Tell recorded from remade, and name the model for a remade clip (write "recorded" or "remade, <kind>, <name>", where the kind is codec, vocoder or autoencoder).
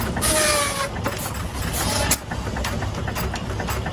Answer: recorded